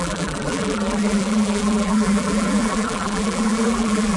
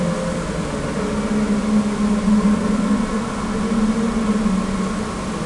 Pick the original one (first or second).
second